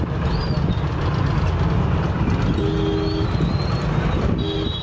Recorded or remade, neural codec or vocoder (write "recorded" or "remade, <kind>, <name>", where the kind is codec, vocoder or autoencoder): recorded